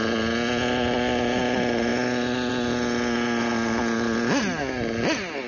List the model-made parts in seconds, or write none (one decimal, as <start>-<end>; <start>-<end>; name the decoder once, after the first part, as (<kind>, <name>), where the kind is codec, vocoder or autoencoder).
none